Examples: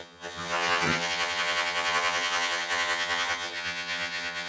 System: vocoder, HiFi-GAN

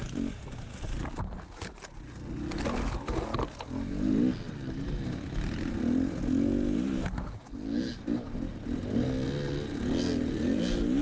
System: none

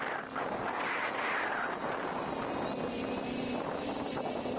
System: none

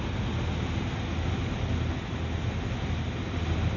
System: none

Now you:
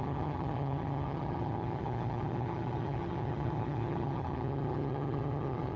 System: vocoder, HiFi-GAN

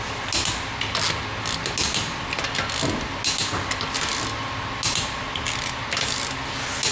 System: none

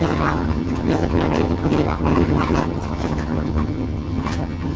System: vocoder, HiFi-GAN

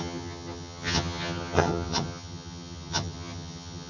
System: vocoder, HiFi-GAN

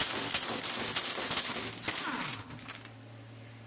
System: none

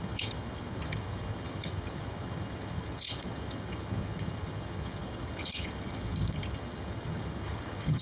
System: vocoder, HiFi-GAN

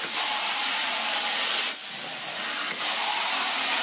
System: none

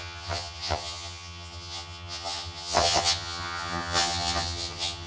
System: vocoder, HiFi-GAN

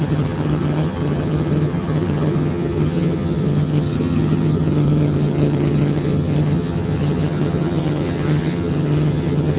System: vocoder, HiFi-GAN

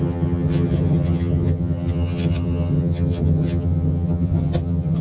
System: vocoder, HiFi-GAN